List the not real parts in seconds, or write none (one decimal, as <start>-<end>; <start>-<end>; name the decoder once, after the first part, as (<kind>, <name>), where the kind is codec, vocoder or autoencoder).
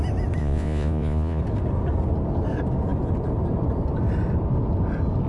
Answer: 0.4-1.4 (vocoder, Vocos)